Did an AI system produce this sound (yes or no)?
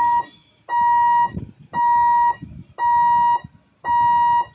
no